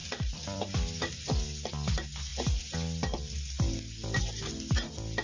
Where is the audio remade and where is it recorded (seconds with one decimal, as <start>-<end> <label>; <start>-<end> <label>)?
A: 0.0-0.7 remade; 0.7-5.2 recorded